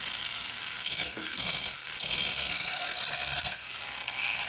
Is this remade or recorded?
remade